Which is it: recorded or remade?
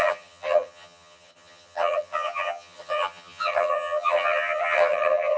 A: remade